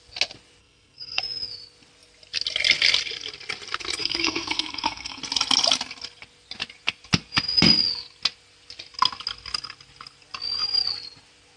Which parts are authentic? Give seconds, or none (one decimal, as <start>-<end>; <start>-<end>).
0.0-0.6; 1.2-4.0; 5.2-11.6